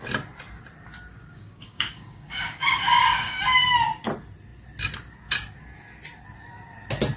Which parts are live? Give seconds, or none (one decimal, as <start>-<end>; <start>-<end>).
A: 0.0-1.1; 3.4-7.2